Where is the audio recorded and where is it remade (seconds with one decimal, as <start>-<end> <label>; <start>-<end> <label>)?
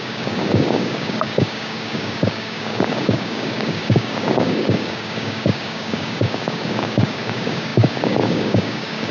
0.0-9.1 remade